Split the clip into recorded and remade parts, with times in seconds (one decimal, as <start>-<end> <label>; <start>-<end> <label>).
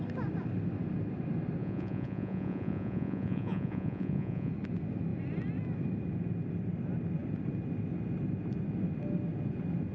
0.0-1.6 recorded; 1.6-4.5 remade; 4.5-9.9 recorded